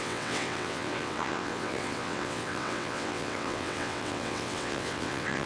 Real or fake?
fake